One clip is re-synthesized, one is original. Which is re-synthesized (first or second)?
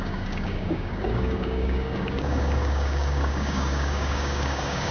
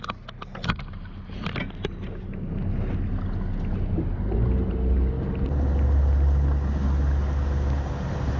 first